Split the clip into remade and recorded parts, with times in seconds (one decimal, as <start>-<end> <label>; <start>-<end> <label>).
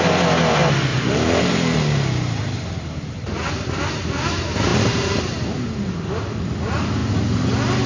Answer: 0.0-0.9 recorded; 0.9-3.5 remade; 3.5-4.7 recorded; 4.7-5.2 remade; 5.2-7.9 recorded